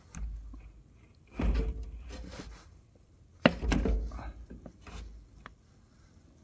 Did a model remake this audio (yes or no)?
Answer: no